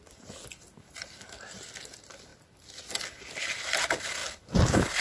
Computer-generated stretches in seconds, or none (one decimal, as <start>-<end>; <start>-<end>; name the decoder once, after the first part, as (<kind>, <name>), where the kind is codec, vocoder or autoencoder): none